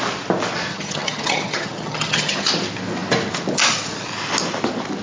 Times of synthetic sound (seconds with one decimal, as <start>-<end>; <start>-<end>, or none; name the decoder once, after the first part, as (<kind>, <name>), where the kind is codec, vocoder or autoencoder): 0.7-2.5 (vocoder, HiFi-GAN)